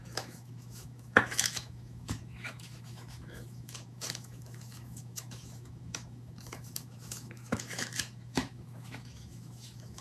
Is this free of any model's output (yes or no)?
no